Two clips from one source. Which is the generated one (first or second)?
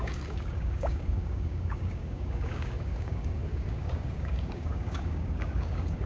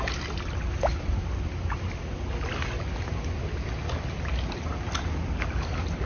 first